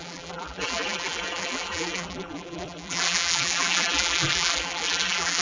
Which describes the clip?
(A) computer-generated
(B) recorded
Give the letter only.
A